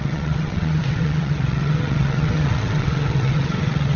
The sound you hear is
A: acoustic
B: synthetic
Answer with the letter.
B